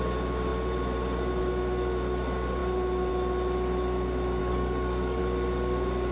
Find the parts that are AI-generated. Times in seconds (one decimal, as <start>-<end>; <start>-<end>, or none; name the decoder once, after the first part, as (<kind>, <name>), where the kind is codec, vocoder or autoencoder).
4.4-5.2 (codec, DAC)